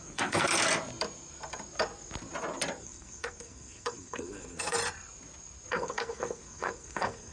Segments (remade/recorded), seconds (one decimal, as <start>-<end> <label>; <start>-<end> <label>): 0.0-0.5 remade; 0.5-2.8 recorded; 2.8-4.8 remade; 4.8-5.7 recorded; 5.7-7.3 remade

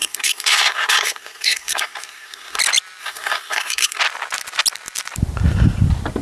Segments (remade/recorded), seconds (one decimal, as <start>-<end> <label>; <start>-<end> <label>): 0.0-2.6 remade; 2.6-3.0 recorded; 3.0-4.0 remade; 4.0-6.2 recorded